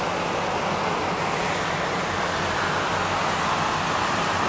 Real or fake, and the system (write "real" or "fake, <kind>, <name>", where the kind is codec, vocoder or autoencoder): real